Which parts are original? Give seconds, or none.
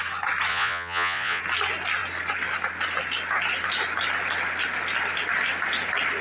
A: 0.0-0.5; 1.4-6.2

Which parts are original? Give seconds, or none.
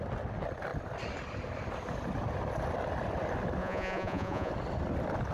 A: 0.0-3.6; 4.5-5.3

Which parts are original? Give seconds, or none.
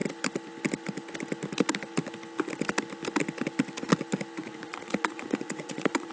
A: 0.0-4.4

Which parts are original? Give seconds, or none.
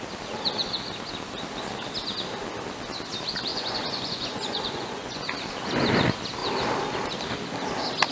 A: 0.0-3.5; 5.2-8.1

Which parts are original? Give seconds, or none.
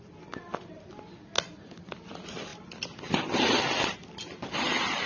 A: 0.0-5.1